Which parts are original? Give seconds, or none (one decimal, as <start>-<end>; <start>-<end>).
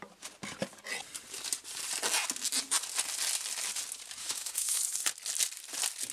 0.0-4.2; 4.8-6.1